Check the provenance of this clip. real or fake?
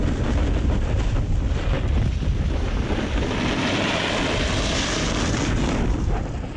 real